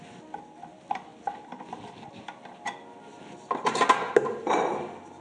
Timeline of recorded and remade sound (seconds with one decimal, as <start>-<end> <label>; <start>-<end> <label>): 0.0-5.2 recorded

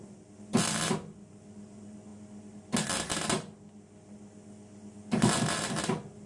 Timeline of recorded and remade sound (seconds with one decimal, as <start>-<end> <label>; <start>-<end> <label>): 0.0-6.3 recorded

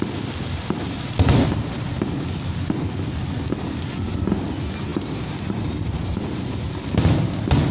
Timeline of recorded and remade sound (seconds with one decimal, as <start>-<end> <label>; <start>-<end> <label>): 0.0-4.9 recorded; 4.9-6.5 remade; 6.5-7.7 recorded

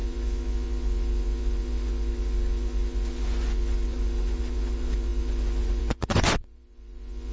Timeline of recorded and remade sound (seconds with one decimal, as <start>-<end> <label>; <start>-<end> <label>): 0.0-7.3 remade

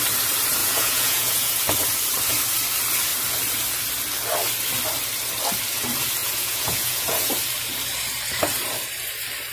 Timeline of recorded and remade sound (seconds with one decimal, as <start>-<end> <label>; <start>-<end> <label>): 0.0-0.6 recorded; 0.6-1.6 remade; 1.6-6.2 recorded; 6.2-7.3 remade; 7.3-9.5 recorded

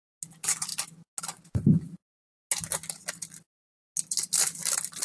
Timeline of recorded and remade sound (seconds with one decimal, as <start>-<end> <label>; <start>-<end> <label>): 0.0-5.0 recorded